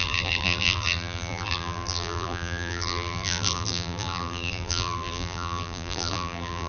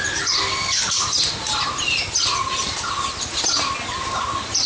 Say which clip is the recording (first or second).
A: second